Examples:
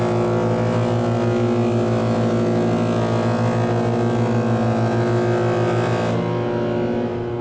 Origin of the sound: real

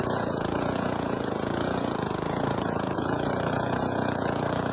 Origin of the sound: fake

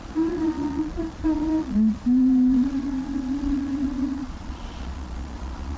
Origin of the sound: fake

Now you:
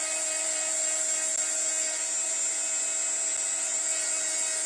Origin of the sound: real